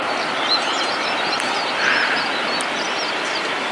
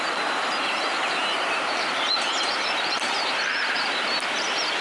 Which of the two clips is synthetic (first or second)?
second